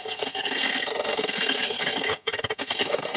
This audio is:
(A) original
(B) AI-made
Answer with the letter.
B